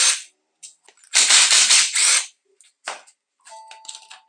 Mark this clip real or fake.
real